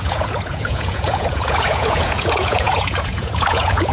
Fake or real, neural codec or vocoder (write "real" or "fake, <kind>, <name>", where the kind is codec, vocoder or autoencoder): fake, vocoder, Vocos